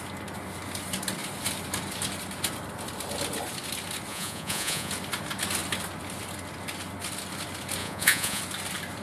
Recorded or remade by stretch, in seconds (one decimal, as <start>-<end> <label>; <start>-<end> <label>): 0.0-4.1 recorded; 4.1-4.9 remade; 4.9-7.8 recorded; 7.8-8.4 remade; 8.4-9.0 recorded